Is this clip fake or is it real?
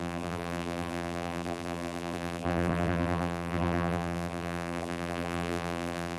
fake